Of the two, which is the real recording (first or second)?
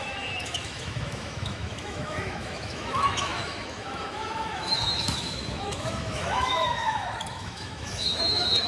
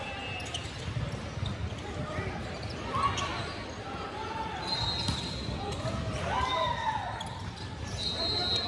second